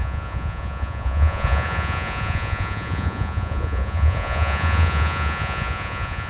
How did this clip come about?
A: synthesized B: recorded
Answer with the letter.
A